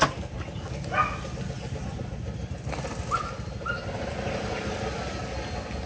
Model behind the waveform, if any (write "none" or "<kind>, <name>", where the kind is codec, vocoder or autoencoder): none